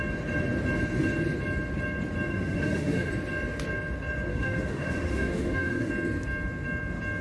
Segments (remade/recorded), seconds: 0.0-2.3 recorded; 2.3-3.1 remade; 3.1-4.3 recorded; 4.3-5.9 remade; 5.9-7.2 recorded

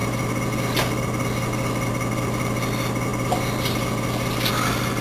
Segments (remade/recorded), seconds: 0.0-5.0 recorded

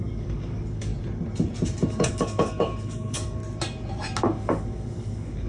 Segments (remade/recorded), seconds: 0.0-0.9 remade; 0.9-1.9 recorded; 1.9-3.4 remade; 3.4-4.2 recorded; 4.2-5.5 remade

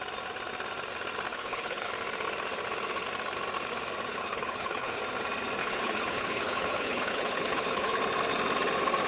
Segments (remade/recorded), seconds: 0.0-1.3 recorded; 1.3-1.9 remade; 1.9-4.1 recorded; 4.1-5.0 remade; 5.0-5.6 recorded; 5.6-8.0 remade; 8.0-9.1 recorded

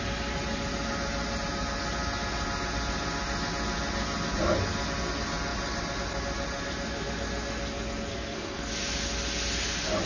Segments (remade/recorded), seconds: 0.0-8.1 recorded; 8.1-8.7 remade; 8.7-10.1 recorded

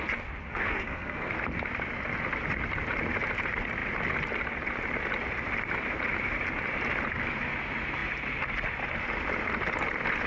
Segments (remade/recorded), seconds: 0.0-0.5 recorded; 0.5-1.3 remade; 1.3-10.3 recorded